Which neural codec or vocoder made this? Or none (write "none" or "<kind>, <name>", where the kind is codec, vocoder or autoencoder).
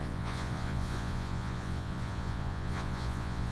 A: vocoder, Vocos